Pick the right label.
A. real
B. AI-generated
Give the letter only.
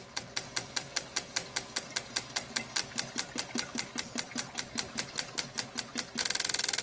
A